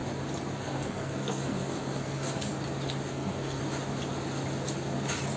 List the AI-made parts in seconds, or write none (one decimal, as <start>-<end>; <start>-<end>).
0.6-2.5; 3.1-3.6